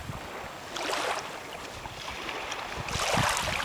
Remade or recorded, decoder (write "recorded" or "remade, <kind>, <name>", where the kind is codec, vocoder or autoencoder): recorded